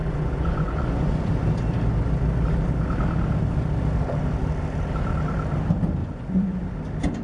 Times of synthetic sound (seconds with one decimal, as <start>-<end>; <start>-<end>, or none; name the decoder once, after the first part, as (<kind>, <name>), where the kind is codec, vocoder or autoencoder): 0.0-1.3 (vocoder, Vocos); 6.0-6.6